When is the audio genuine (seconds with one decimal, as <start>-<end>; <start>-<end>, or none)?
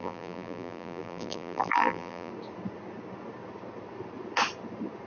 2.3-5.1